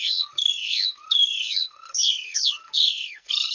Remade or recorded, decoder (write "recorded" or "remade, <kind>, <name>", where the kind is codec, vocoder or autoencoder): remade, codec, SNAC